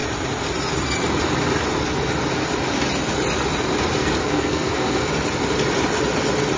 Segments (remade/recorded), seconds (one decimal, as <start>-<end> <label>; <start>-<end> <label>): 0.0-4.0 recorded; 4.0-5.1 remade; 5.1-6.6 recorded